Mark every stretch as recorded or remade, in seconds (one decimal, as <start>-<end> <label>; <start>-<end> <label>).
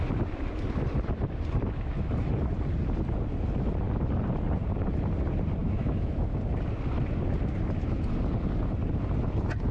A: 0.0-5.6 recorded; 5.6-6.4 remade; 6.4-9.7 recorded